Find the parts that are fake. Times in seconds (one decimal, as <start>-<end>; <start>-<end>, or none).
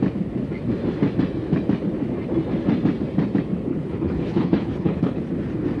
3.7-5.2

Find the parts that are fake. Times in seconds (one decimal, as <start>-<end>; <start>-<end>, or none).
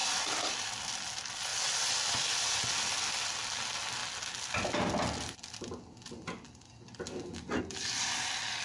0.0-0.8; 1.5-2.6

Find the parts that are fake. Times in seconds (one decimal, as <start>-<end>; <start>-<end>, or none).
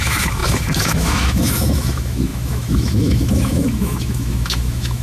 0.0-5.0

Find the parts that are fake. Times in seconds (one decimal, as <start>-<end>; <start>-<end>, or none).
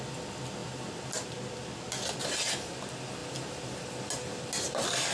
none